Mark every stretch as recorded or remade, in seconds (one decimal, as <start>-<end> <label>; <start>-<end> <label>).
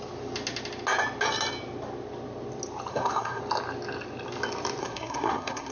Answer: 0.0-2.9 recorded; 2.9-3.4 remade; 3.4-4.8 recorded; 4.8-5.7 remade